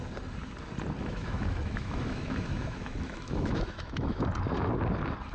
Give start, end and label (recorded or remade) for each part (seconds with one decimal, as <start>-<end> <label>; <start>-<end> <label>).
0.0-1.0 recorded; 1.0-4.2 remade; 4.2-5.3 recorded